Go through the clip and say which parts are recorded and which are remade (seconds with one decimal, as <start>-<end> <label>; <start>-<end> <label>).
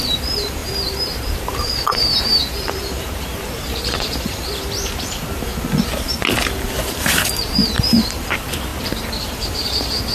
0.0-5.5 remade; 5.5-6.9 recorded; 6.9-8.7 remade; 8.7-9.2 recorded; 9.2-10.1 remade